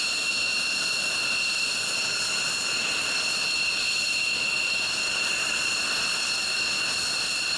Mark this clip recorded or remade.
recorded